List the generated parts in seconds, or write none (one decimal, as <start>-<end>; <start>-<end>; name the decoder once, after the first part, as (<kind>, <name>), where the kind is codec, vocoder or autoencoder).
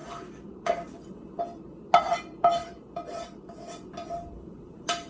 0.0-1.4 (vocoder, BigVGAN v2); 2.6-3.6; 4.0-5.1